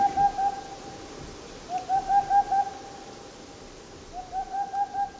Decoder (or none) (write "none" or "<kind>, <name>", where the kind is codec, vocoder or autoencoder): none